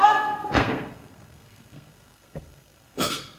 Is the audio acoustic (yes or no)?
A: no